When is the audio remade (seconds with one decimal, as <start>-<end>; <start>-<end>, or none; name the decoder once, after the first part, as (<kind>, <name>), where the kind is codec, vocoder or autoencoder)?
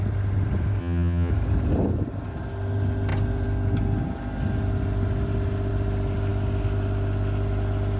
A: 0.8-1.3 (vocoder, HiFi-GAN)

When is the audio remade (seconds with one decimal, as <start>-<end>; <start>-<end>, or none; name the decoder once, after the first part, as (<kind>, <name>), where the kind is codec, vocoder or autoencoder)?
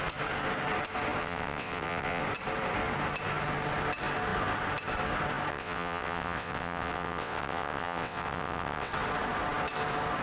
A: 1.2-2.2 (vocoder, WaveNeXt); 5.5-8.9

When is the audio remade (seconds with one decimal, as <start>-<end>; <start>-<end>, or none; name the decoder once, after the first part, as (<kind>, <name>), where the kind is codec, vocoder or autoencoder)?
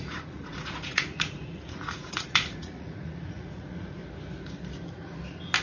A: 0.0-4.0 (vocoder, Vocos)